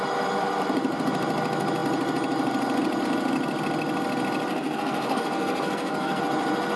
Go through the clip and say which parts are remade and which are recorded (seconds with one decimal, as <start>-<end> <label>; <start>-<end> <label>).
0.0-4.5 recorded; 4.5-6.2 remade; 6.2-6.8 recorded